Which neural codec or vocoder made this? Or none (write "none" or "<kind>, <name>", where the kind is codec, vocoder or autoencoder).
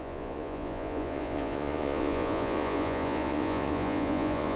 vocoder, Vocos